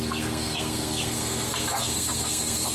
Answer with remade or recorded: remade